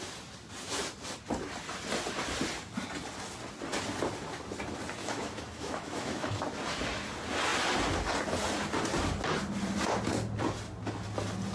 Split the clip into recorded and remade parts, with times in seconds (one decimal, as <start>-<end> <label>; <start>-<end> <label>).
0.0-5.0 recorded; 5.0-6.4 remade; 6.4-11.5 recorded